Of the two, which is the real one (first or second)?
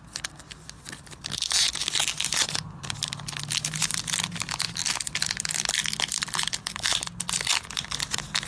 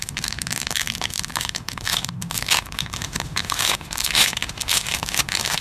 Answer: first